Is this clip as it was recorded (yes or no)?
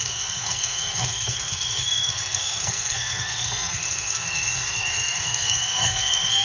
no